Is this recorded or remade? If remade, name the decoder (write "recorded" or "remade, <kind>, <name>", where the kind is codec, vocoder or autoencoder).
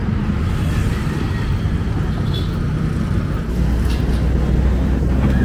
recorded